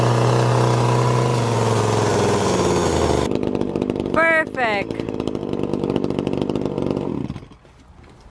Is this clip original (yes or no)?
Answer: yes